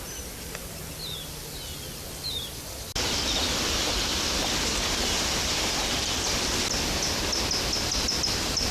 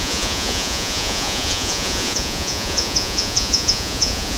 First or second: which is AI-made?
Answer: second